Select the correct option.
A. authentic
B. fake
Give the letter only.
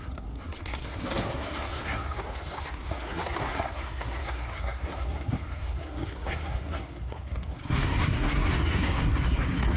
B